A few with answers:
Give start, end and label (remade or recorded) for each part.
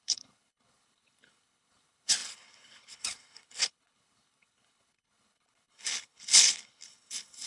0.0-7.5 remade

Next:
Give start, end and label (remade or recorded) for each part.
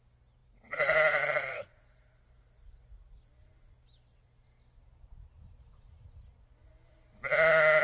0.0-0.4 recorded; 0.4-1.8 remade; 1.8-7.8 recorded